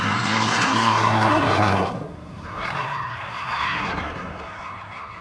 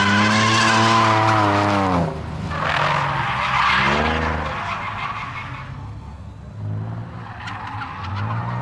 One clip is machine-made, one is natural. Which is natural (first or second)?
second